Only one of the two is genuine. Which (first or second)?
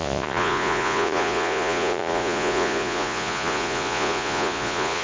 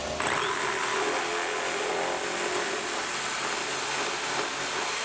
second